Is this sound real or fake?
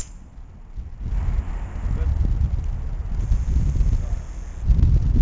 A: real